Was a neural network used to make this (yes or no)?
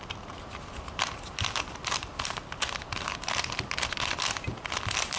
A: no